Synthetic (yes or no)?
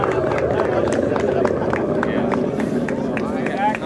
no